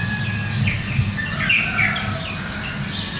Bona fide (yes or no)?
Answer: yes